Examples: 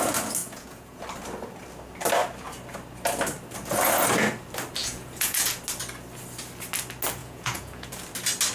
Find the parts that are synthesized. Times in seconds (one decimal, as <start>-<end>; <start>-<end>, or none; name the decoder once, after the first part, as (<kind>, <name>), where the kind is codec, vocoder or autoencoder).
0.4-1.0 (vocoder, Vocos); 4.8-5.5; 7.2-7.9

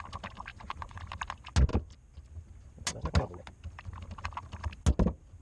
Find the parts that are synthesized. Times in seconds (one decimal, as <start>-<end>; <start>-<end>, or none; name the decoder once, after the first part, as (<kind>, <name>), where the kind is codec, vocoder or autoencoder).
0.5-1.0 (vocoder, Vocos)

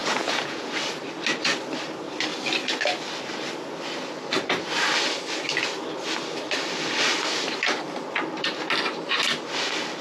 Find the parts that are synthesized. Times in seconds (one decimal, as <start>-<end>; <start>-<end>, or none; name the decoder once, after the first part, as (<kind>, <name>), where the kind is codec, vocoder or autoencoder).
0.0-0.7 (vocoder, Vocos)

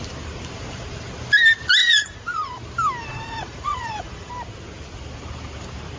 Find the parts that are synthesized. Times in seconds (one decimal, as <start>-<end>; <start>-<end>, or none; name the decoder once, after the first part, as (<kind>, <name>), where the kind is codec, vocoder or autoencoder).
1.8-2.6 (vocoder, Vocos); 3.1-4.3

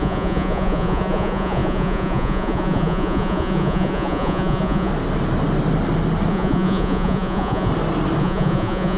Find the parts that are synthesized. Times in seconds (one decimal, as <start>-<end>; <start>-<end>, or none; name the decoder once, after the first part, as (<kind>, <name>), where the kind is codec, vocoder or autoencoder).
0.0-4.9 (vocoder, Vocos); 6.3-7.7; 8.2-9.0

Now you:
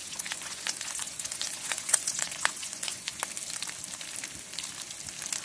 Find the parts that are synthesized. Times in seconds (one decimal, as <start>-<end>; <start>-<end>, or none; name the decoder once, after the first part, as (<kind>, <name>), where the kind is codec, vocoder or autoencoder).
0.0-3.2 (vocoder, Vocos)

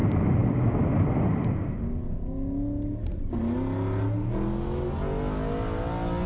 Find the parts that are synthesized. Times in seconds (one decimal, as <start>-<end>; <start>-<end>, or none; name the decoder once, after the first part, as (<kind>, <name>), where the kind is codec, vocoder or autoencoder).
none

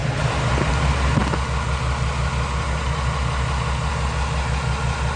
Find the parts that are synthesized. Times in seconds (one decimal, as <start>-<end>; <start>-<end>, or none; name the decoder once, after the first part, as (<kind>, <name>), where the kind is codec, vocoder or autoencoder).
none